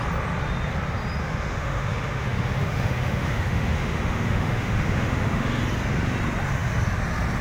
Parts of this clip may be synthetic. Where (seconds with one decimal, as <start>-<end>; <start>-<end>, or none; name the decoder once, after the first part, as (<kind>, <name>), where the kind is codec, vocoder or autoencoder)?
1.2-5.6 (autoencoder, DAC-VAE)